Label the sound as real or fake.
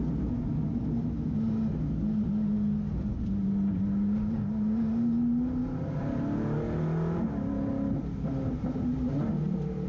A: real